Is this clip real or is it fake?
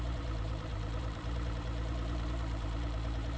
fake